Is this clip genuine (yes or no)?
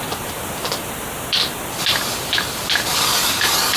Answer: yes